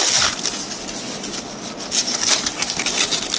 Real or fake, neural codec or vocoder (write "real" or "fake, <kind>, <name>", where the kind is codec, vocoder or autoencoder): real